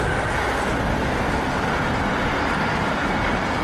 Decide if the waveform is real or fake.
real